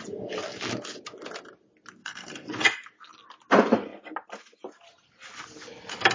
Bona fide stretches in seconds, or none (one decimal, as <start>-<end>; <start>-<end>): 0.0-2.0; 2.5-6.1